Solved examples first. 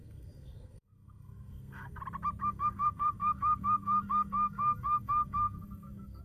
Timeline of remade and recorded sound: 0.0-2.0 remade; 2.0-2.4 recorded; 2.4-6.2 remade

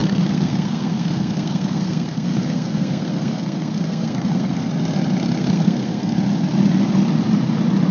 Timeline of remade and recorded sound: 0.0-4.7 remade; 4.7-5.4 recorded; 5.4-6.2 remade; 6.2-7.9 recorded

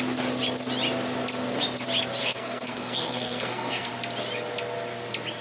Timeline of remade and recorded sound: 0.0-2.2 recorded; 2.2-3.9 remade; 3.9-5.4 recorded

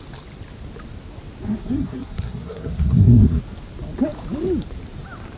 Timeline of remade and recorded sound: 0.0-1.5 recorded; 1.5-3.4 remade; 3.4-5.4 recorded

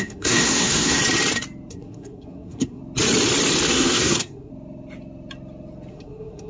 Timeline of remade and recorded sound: 0.0-1.0 remade; 1.0-1.7 recorded; 1.7-2.8 remade; 2.8-3.7 recorded; 3.7-4.5 remade; 4.5-5.9 recorded; 5.9-6.5 remade

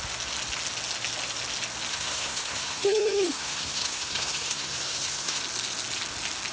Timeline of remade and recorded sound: 0.0-1.9 recorded; 1.9-5.4 remade; 5.4-6.5 recorded